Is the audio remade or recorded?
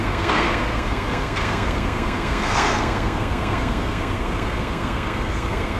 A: remade